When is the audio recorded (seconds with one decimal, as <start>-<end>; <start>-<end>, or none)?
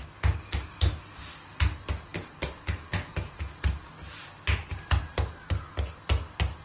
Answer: 0.0-6.6